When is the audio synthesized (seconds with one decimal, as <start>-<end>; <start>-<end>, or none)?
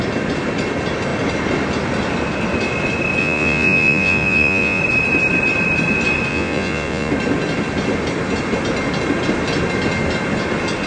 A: 3.2-4.8; 6.3-7.1